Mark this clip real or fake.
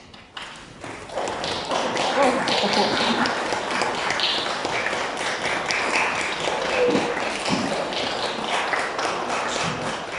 real